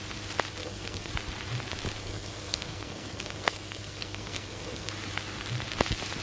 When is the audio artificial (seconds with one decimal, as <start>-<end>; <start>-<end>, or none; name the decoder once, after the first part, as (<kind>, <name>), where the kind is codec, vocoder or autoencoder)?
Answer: 0.6-1.1 (codec, SNAC); 2.0-4.9